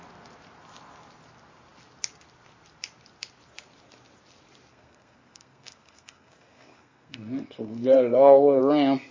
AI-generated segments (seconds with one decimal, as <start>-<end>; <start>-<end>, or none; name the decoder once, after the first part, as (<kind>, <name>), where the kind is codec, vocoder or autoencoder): 4.7-8.6 (codec, SNAC)